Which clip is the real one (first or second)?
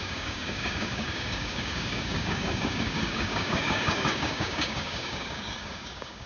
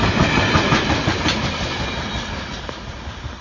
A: second